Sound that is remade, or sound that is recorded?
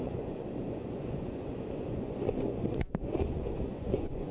remade